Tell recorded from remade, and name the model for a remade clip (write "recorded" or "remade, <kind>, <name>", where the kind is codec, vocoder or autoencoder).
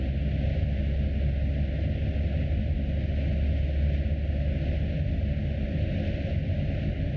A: recorded